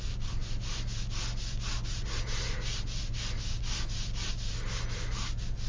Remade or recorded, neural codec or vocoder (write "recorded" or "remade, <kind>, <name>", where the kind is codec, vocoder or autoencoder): recorded